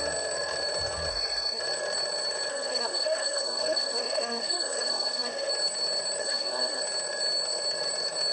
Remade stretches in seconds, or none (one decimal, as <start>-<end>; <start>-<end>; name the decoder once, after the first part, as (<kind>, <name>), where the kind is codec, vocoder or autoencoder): 1.1-1.6 (codec, SNAC); 2.5-5.5; 6.2-6.8